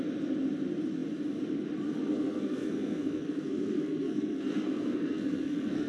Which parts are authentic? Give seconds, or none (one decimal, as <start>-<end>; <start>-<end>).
0.0-2.1